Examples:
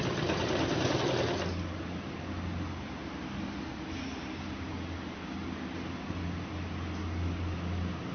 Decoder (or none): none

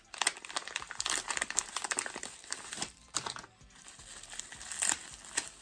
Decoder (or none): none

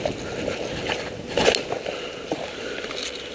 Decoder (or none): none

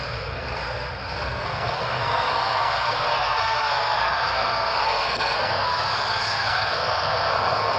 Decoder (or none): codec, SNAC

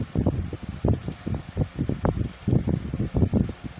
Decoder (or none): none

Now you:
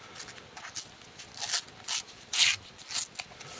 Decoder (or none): none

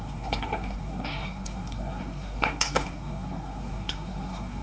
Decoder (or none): codec, SNAC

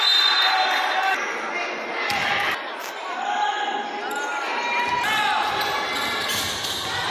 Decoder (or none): none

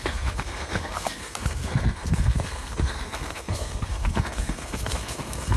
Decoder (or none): codec, SNAC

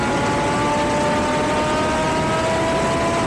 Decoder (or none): none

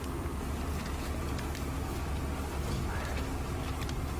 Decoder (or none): none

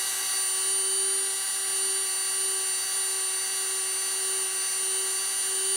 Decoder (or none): none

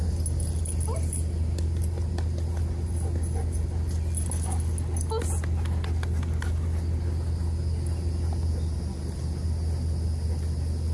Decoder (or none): none